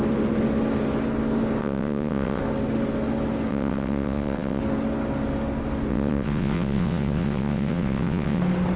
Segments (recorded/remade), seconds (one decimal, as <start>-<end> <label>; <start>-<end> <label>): 0.0-1.6 recorded; 1.6-2.4 remade; 2.4-3.5 recorded; 3.5-4.6 remade; 4.6-5.9 recorded; 5.9-8.4 remade; 8.4-8.8 recorded